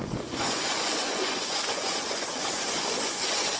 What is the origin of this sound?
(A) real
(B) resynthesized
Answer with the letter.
B